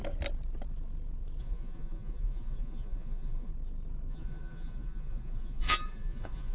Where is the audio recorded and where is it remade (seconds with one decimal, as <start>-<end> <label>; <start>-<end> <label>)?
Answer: 0.0-1.4 recorded; 1.4-3.5 remade; 3.5-4.1 recorded; 4.1-6.5 remade